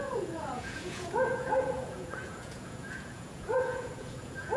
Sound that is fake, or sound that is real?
fake